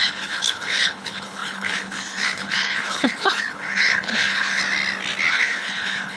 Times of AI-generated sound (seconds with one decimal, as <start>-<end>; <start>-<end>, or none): 0.0-4.6; 5.3-6.2